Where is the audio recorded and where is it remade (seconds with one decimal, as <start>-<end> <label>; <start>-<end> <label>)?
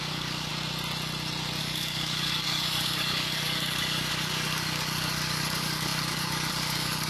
0.0-0.5 remade; 0.5-1.6 recorded; 1.6-7.1 remade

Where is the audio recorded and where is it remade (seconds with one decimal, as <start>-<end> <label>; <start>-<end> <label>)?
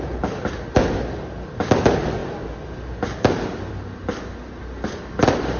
0.0-5.6 recorded